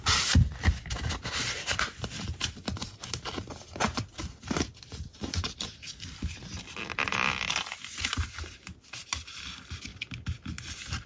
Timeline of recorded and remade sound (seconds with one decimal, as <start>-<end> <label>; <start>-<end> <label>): 0.0-11.1 recorded